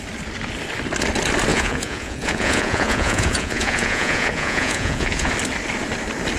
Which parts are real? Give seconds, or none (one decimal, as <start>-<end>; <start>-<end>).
0.0-1.5; 5.3-6.4

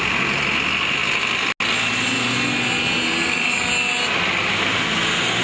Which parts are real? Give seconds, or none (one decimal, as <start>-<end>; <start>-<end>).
0.0-5.4